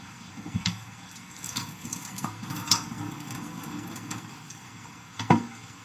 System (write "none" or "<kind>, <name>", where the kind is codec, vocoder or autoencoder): codec, SNAC